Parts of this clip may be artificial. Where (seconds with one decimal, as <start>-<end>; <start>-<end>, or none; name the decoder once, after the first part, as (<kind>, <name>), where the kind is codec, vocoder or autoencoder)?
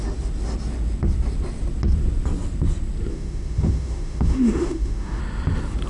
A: 3.1-5.2 (autoencoder, DAC-VAE)